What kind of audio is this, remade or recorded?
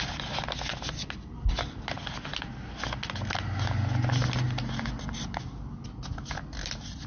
recorded